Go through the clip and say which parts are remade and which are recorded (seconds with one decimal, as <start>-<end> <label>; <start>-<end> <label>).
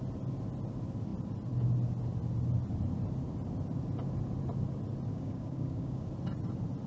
0.0-5.1 recorded; 5.1-6.1 remade; 6.1-6.9 recorded